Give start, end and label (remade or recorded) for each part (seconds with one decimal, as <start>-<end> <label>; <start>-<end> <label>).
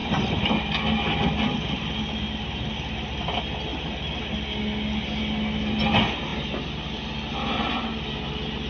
0.0-8.7 recorded